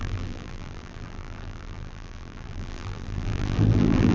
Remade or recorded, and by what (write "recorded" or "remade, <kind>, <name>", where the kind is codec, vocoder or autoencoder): remade, vocoder, BigVGAN v2